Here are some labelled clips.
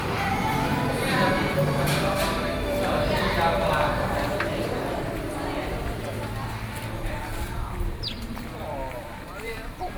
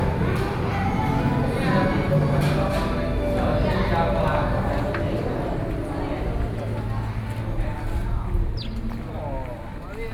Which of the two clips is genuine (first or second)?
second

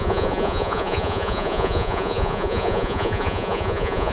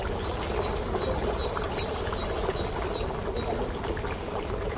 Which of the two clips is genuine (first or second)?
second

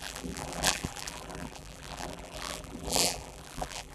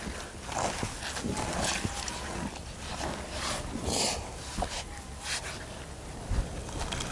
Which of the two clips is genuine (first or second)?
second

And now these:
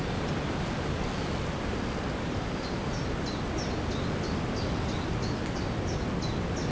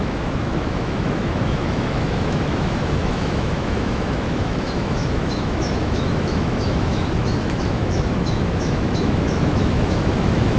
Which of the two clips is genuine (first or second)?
first